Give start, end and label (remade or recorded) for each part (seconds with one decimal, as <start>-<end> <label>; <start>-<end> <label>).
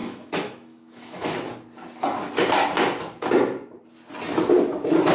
0.0-1.3 remade; 1.3-5.1 recorded